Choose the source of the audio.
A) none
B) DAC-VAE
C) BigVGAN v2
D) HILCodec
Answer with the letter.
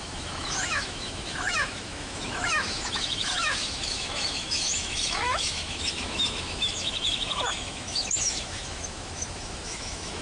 B